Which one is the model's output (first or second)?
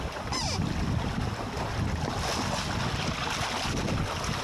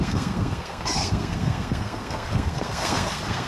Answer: second